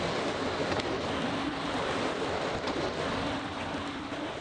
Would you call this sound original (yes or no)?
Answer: yes